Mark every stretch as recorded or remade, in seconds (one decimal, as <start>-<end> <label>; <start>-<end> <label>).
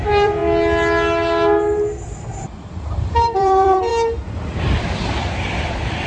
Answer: 0.0-0.4 remade; 0.4-3.0 recorded; 3.0-3.9 remade; 3.9-4.6 recorded; 4.6-6.1 remade